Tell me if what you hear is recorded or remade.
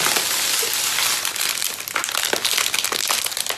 recorded